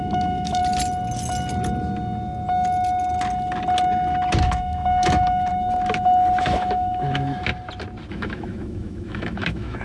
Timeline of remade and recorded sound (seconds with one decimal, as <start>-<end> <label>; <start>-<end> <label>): 0.0-0.6 remade; 0.6-4.4 recorded; 4.4-5.5 remade; 5.5-6.4 recorded; 6.4-7.5 remade; 7.5-8.1 recorded; 8.1-9.8 remade